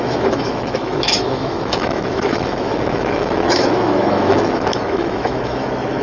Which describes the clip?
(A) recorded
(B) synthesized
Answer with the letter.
B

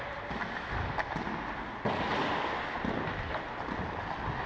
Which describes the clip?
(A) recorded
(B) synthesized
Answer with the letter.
A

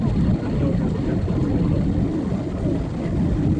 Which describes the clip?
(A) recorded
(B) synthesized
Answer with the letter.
A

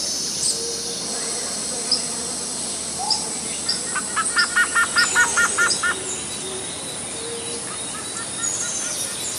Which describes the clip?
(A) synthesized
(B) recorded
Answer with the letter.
B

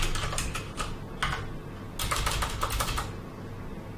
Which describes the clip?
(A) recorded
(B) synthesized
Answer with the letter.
A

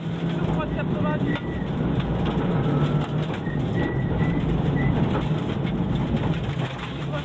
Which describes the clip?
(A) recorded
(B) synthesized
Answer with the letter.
A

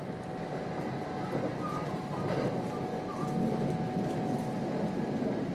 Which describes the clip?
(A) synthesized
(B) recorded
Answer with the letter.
B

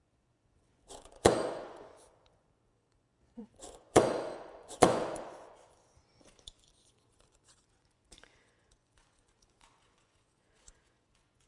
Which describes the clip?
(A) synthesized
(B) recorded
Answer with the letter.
A